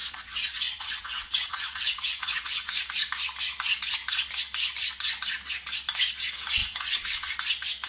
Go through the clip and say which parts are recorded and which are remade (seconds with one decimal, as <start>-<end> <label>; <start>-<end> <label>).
0.0-2.8 remade; 2.8-6.6 recorded; 6.6-7.3 remade; 7.3-7.9 recorded